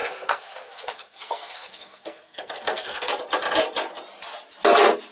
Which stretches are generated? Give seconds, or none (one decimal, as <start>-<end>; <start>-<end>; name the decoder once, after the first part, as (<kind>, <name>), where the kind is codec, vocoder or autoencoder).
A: 0.0-3.1 (codec, SNAC)